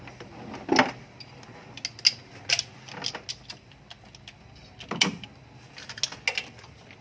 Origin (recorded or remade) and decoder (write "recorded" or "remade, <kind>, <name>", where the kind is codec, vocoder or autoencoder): recorded